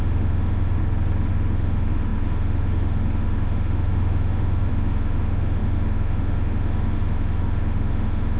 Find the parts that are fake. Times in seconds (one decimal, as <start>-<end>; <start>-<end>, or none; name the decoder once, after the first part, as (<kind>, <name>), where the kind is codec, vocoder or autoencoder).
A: 0.0-0.8 (autoencoder, DAC-VAE); 1.3-8.4

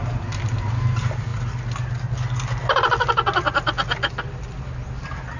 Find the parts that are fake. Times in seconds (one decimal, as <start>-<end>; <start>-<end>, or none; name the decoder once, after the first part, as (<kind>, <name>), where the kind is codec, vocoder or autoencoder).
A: none

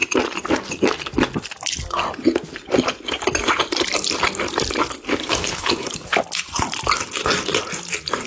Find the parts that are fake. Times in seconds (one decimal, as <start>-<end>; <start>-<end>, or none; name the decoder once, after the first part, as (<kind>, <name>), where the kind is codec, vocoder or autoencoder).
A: 5.2-5.9 (codec, HILCodec)

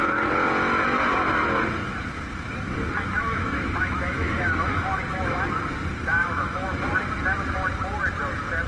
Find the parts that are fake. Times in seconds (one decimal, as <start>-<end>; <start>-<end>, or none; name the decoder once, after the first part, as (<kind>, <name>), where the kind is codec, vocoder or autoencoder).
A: 3.2-5.4 (autoencoder, DAC-VAE); 6.2-6.8